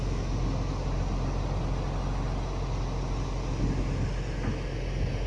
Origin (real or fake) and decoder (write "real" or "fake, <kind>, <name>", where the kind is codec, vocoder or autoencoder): real